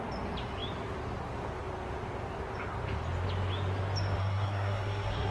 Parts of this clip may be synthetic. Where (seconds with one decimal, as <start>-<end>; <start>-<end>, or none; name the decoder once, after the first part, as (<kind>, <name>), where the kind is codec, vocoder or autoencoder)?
4.2-5.3 (codec, SNAC)

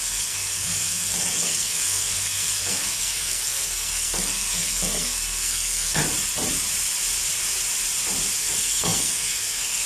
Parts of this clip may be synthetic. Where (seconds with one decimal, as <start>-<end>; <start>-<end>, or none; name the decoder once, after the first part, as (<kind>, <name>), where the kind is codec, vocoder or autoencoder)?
0.0-6.0 (codec, SNAC); 8.4-9.9

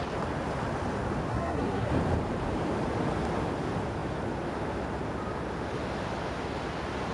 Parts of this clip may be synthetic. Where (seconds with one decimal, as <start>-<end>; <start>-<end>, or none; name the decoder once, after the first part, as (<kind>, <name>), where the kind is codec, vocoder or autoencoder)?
1.3-1.9 (codec, SNAC)